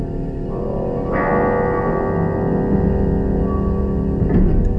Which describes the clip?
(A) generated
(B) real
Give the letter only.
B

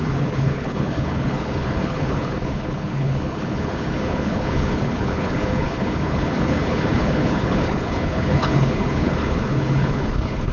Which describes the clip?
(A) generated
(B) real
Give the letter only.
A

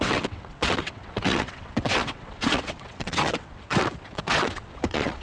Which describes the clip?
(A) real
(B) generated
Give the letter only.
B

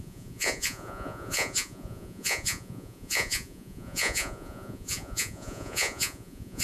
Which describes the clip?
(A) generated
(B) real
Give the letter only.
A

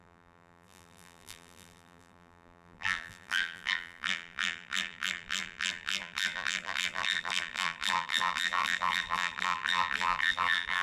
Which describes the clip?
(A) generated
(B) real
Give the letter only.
A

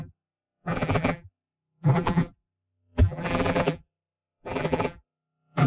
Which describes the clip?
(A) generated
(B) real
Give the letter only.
A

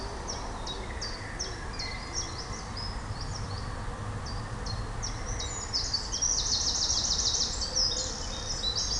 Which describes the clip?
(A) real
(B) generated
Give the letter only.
A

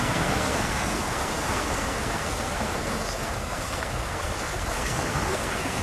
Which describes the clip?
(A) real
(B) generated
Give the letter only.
B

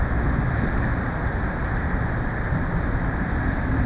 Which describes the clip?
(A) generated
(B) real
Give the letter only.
B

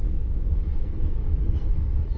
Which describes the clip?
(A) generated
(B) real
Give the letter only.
A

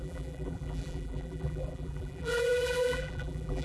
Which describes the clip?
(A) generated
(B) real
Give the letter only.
A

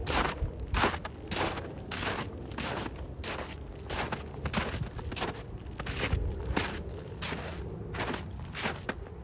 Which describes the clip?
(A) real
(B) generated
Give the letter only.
A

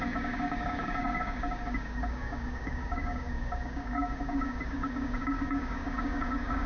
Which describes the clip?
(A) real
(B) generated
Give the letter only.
B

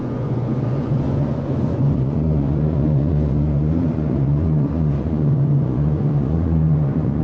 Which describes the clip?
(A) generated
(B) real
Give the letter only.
A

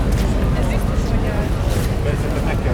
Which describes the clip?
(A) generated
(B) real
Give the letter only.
B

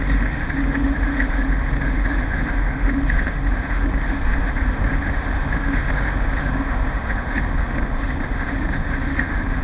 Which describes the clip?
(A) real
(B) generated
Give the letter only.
B